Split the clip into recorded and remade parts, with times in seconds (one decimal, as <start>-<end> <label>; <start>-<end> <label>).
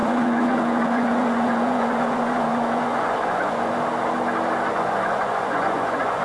0.0-3.7 remade; 3.7-4.7 recorded; 4.7-6.2 remade